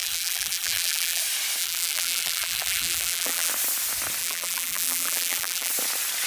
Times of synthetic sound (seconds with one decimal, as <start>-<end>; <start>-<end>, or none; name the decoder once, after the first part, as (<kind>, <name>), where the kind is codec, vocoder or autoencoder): 0.0-1.2 (vocoder, BigVGAN v2); 1.6-3.5; 4.2-5.7